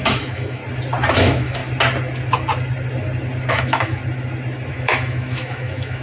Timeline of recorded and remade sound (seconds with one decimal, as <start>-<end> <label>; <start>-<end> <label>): 0.0-0.6 remade; 0.6-1.1 recorded; 1.1-1.6 remade; 1.6-3.5 recorded; 3.5-4.0 remade; 4.0-4.7 recorded; 4.7-6.0 remade